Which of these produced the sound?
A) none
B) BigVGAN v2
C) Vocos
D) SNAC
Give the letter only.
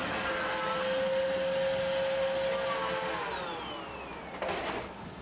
A